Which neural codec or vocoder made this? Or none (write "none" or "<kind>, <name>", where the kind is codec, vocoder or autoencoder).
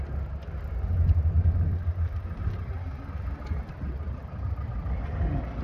none